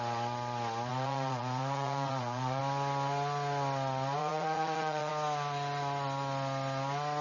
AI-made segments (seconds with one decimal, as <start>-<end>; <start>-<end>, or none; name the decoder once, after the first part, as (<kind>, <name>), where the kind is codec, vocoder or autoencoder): 0.9-2.6 (vocoder, Vocos); 4.2-5.1